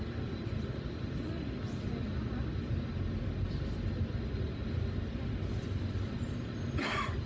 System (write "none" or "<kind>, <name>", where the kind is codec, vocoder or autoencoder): none